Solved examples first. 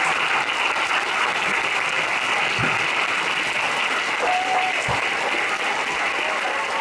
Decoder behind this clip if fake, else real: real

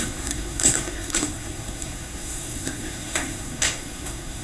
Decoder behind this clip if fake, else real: fake, codec, SNAC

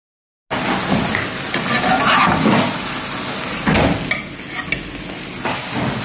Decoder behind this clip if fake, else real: real